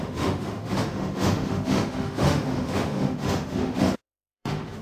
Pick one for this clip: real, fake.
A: fake